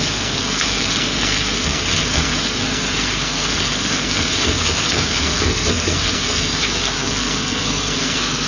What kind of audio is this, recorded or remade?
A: remade